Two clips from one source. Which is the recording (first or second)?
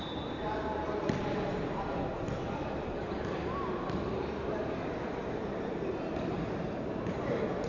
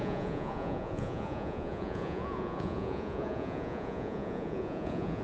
first